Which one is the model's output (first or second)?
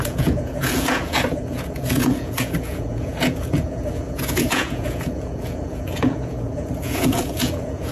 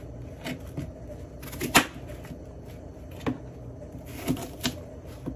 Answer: first